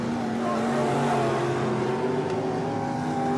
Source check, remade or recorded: recorded